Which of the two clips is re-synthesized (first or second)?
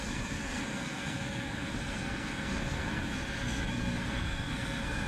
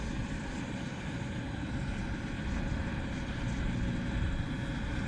first